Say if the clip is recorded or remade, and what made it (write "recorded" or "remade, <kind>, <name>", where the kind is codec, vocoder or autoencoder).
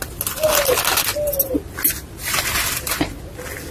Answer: recorded